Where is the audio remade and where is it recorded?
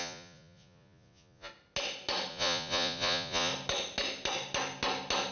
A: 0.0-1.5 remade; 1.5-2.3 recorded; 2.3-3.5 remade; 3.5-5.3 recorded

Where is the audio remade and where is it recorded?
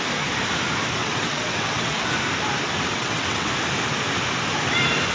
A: 0.0-1.0 recorded; 1.0-2.1 remade; 2.1-2.9 recorded; 2.9-3.5 remade; 3.5-5.1 recorded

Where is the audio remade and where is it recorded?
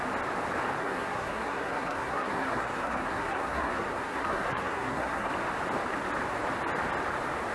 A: 0.0-0.8 recorded; 0.8-5.3 remade; 5.3-7.5 recorded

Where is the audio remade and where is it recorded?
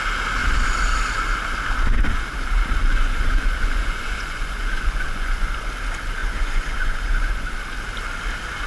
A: 0.0-2.9 recorded; 2.9-5.5 remade; 5.5-6.2 recorded; 6.2-7.5 remade; 7.5-8.7 recorded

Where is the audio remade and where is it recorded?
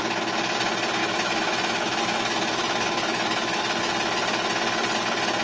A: 0.0-1.0 recorded; 1.0-3.8 remade; 3.8-5.4 recorded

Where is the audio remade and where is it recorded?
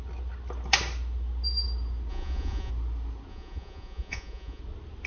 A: 0.0-2.1 recorded; 2.1-2.7 remade; 2.7-3.3 recorded; 3.3-4.6 remade; 4.6-5.1 recorded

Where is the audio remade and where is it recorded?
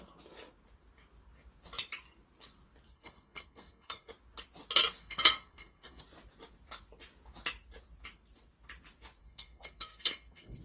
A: 0.0-2.9 recorded; 2.9-4.1 remade; 4.1-5.0 recorded; 5.0-6.0 remade; 6.0-9.2 recorded; 9.2-10.6 remade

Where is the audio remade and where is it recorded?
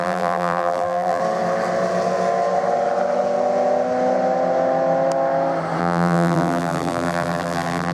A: 0.0-1.2 remade; 1.2-5.8 recorded; 5.8-7.9 remade